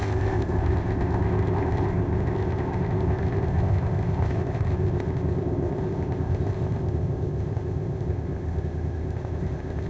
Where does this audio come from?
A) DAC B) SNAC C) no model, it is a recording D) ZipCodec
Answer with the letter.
D